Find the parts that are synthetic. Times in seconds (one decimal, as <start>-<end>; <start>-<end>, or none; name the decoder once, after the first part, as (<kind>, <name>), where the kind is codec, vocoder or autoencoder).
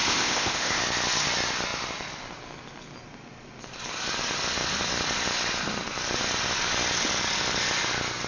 0.0-0.8 (codec, ZipCodec)